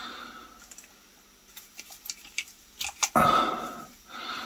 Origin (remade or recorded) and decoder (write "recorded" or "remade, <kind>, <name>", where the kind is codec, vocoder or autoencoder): recorded